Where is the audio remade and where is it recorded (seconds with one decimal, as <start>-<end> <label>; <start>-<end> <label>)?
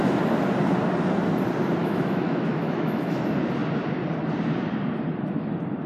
0.0-1.8 recorded; 1.8-3.2 remade; 3.2-5.9 recorded